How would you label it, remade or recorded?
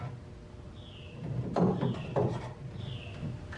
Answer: recorded